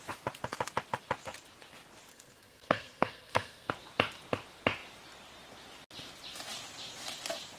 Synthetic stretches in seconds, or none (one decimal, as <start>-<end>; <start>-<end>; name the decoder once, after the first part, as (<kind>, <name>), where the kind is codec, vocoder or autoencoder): 2.1-3.7 (codec, SNAC)